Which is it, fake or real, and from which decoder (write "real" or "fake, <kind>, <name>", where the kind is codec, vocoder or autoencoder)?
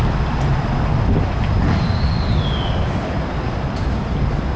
real